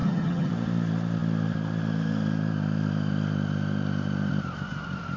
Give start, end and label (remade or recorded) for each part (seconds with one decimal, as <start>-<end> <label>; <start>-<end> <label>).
0.0-0.5 remade; 0.5-5.2 recorded

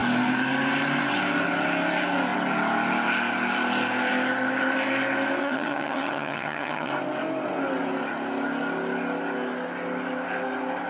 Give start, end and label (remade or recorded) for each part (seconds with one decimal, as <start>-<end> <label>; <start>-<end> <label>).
0.0-5.4 recorded; 5.4-6.9 remade; 6.9-10.9 recorded

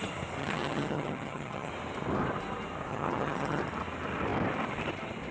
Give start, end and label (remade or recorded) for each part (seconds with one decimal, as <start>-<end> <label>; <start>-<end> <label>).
0.0-0.4 recorded; 0.4-1.7 remade; 1.7-2.9 recorded; 2.9-3.6 remade; 3.6-5.3 recorded

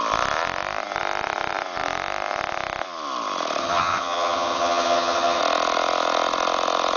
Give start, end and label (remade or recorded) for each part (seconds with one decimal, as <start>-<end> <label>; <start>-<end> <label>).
0.0-3.6 recorded; 3.6-5.4 remade; 5.4-7.0 recorded

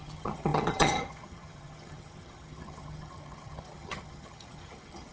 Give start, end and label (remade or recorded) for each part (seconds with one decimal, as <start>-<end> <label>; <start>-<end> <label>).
0.0-5.1 remade

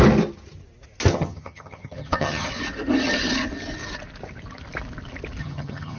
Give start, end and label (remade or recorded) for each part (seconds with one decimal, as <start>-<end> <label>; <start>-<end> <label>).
0.0-1.1 recorded; 1.1-2.5 remade; 2.5-5.4 recorded; 5.4-6.0 remade

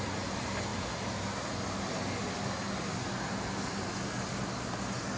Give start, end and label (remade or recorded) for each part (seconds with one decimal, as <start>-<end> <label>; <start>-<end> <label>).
0.0-5.2 recorded